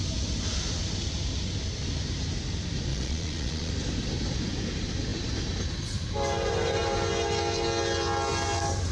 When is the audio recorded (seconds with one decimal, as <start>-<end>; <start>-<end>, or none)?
0.0-2.9; 3.7-8.9